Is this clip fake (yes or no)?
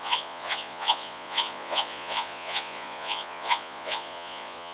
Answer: yes